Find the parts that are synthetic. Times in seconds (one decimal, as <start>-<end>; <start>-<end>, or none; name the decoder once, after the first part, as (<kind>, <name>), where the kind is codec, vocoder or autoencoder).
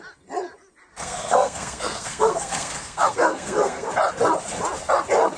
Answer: 0.9-3.9 (codec, SNAC)